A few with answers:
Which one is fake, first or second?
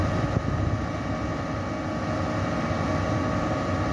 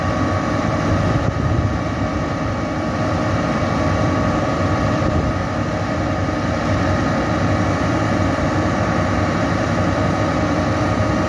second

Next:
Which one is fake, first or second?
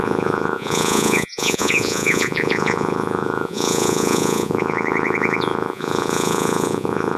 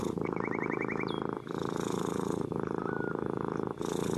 first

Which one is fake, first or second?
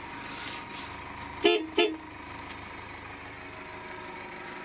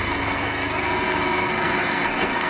second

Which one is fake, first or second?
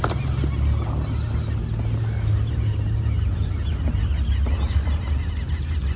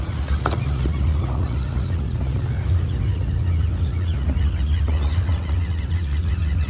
second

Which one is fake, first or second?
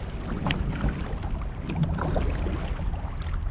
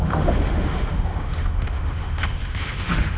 second